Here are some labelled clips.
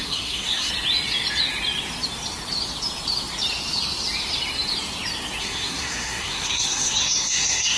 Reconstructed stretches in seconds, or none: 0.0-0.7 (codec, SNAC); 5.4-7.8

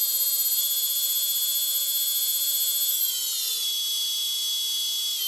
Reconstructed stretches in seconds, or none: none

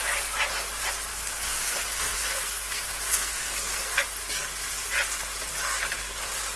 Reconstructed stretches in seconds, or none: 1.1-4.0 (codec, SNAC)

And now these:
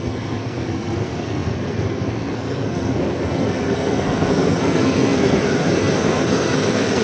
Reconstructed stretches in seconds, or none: 0.0-7.0 (codec, SNAC)

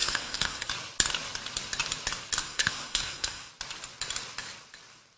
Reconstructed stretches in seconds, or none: 0.0-0.7 (codec, SNAC); 2.4-3.5

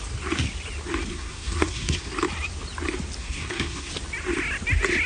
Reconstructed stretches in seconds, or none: 1.1-2.1 (codec, SNAC); 3.2-3.9

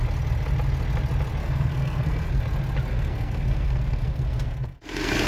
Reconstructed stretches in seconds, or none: 1.4-2.4 (codec, SNAC); 2.9-5.3

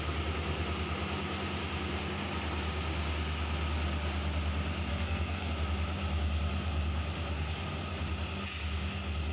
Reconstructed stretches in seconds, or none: 4.9-5.5 (codec, SNAC)